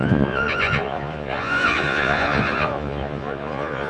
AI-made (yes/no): yes